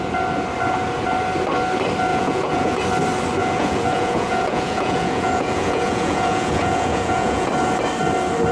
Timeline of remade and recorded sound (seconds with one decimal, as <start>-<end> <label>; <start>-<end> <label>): 0.0-2.1 recorded; 2.1-2.8 remade; 2.8-3.4 recorded; 3.4-7.5 remade; 7.5-8.5 recorded